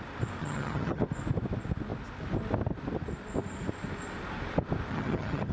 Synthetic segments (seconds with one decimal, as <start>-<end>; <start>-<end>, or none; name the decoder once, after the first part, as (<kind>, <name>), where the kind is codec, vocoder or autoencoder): 0.4-1.0 (vocoder, HiFi-GAN); 4.9-5.5